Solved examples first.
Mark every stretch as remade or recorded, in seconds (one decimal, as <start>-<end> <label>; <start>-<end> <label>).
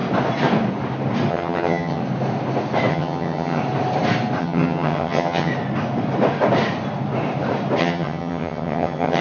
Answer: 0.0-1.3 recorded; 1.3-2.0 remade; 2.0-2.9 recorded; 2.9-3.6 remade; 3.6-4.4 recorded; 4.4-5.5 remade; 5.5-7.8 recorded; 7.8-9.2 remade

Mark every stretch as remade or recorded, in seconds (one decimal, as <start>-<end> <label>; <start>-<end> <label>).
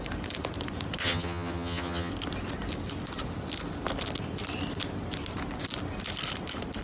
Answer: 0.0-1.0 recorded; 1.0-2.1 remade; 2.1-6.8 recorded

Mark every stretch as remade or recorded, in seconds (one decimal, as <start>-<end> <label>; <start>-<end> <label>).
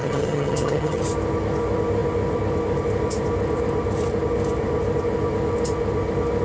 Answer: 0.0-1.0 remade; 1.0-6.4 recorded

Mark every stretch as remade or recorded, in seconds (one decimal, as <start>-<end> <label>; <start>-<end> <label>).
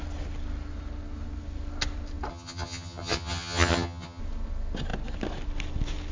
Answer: 0.0-2.3 recorded; 2.3-4.2 remade; 4.2-6.1 recorded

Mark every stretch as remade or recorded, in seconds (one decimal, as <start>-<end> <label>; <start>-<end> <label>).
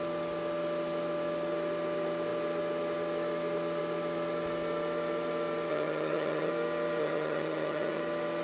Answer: 0.0-5.7 recorded; 5.7-6.5 remade; 6.5-7.0 recorded; 7.0-8.0 remade; 8.0-8.4 recorded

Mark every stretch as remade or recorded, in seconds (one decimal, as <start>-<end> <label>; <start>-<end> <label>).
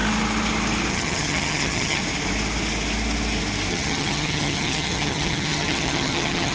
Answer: 0.0-0.9 recorded; 0.9-2.0 remade; 2.0-3.7 recorded; 3.7-6.5 remade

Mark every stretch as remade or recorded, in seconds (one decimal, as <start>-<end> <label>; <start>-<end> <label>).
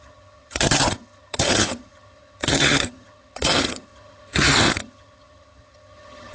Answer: 0.0-6.3 remade